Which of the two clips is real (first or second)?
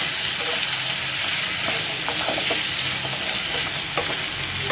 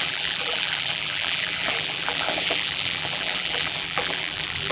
first